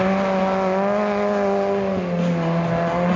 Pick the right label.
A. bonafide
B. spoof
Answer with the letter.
A